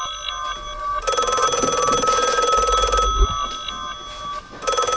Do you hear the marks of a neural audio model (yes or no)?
no